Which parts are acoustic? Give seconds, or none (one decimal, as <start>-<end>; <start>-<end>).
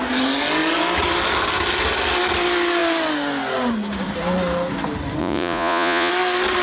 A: 0.0-5.2; 6.1-6.6